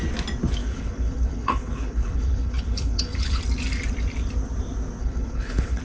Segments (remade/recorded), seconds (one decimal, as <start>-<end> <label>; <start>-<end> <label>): 0.0-0.6 recorded; 0.6-3.4 remade; 3.4-5.0 recorded; 5.0-5.8 remade